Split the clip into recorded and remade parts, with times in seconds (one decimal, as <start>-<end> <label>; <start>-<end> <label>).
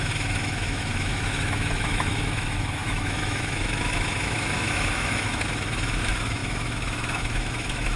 0.0-8.0 remade